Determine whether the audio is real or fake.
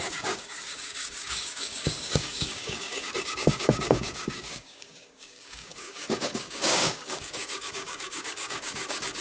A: fake